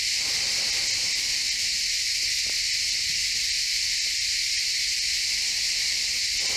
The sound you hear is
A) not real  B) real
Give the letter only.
B